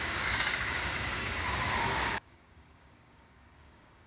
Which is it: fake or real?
fake